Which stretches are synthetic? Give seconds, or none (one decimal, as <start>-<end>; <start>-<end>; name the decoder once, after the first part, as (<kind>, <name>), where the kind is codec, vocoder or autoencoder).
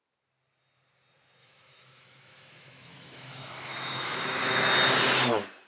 1.4-4.7 (autoencoder, DAC-VAE)